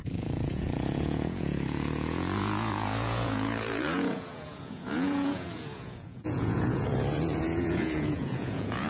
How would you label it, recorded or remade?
remade